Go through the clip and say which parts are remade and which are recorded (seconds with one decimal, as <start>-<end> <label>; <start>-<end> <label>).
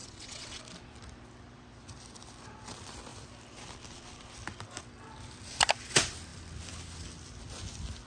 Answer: 0.0-0.6 remade; 0.6-8.1 recorded